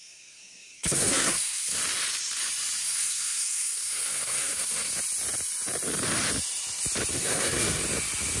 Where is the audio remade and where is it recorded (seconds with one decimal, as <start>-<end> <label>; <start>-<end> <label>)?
0.0-1.8 remade; 1.8-2.8 recorded; 2.8-4.9 remade; 4.9-7.1 recorded; 7.1-7.8 remade; 7.8-8.4 recorded